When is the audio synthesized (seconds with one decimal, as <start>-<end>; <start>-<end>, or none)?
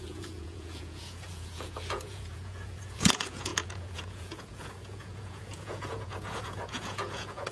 0.0-7.5